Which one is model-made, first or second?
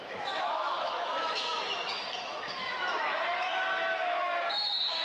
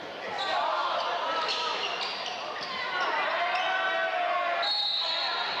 first